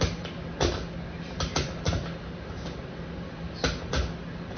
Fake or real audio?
real